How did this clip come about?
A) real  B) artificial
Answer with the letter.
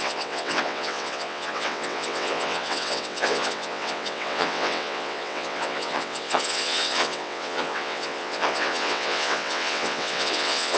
B